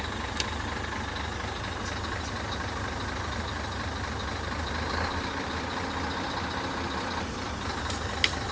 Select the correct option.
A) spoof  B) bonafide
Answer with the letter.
B